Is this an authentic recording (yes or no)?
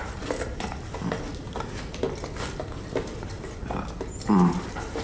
yes